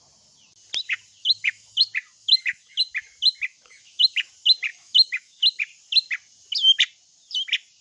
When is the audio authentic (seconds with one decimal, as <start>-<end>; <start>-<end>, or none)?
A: 0.0-1.2; 1.8-2.2; 2.8-3.5; 4.3-4.7; 5.6-7.8